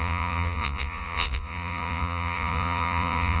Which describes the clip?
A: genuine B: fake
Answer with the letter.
B